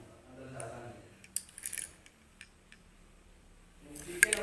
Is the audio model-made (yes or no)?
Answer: no